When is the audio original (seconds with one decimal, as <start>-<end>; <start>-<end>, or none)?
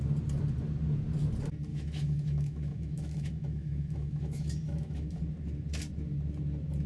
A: 0.0-1.7; 5.2-6.9